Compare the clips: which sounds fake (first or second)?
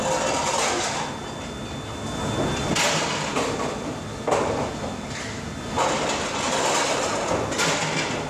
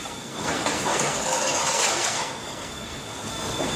second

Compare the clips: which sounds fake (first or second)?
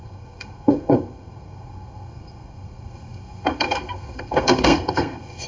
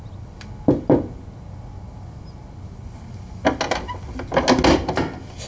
first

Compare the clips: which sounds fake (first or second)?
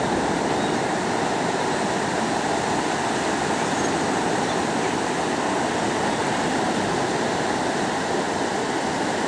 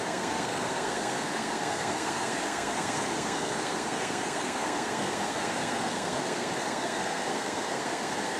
second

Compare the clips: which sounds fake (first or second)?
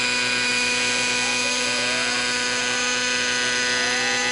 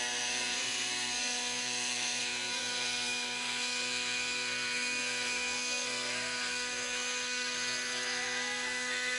second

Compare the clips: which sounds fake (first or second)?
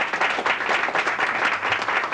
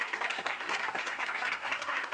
second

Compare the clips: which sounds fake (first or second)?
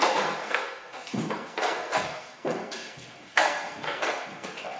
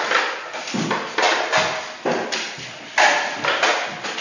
first